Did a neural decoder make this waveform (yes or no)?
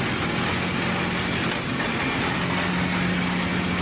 no